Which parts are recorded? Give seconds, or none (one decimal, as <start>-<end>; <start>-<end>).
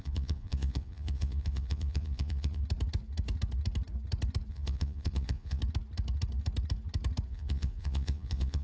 2.6-4.5; 5.6-7.3